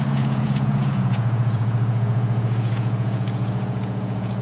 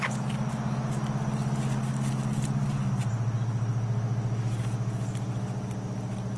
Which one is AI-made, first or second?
first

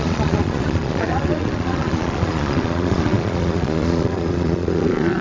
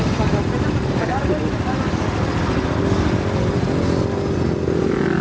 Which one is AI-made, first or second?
first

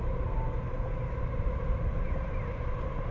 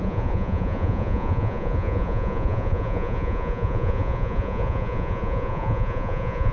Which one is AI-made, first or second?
second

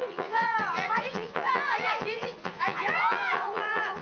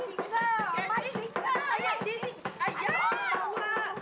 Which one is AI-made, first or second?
first